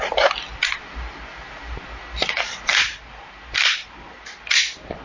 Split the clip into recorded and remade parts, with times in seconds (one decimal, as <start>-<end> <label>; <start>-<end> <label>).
0.0-5.0 recorded